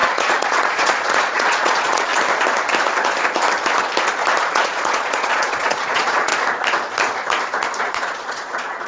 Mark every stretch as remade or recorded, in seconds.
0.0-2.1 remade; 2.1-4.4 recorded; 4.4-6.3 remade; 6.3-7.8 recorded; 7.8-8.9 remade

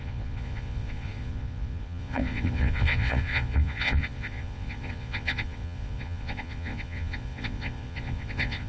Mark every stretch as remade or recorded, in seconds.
0.0-8.7 remade

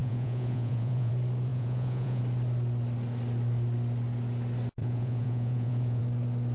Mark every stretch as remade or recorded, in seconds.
0.0-1.1 remade; 1.1-1.5 recorded; 1.5-2.2 remade; 2.2-4.8 recorded; 4.8-6.0 remade; 6.0-6.5 recorded

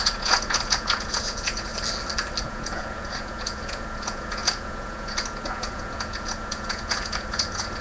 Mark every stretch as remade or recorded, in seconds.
0.0-1.7 remade; 1.7-2.4 recorded; 2.4-7.8 remade

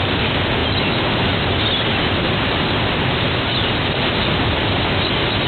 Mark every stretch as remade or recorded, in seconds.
0.0-5.5 recorded

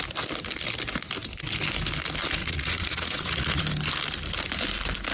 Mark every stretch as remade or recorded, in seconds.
0.0-2.4 recorded; 2.4-3.6 remade; 3.6-5.1 recorded

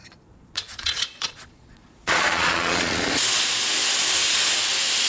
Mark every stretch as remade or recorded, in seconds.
0.0-3.1 remade; 3.1-5.1 recorded

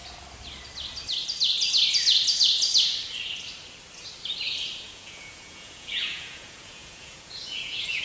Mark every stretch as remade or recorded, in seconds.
0.0-4.8 recorded; 4.8-8.0 remade